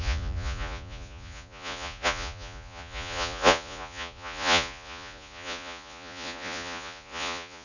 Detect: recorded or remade remade